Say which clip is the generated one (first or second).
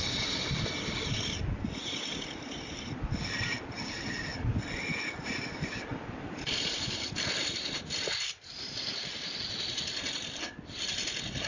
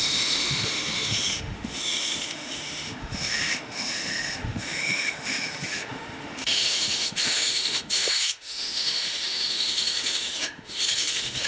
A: second